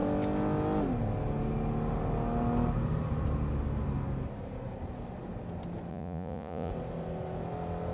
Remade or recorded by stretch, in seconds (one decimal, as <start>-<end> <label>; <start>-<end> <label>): 0.0-5.9 recorded; 5.9-6.7 remade; 6.7-7.9 recorded